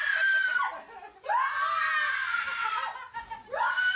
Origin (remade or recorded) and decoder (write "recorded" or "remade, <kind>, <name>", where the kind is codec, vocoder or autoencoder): recorded